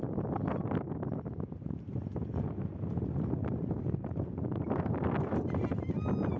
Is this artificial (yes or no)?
no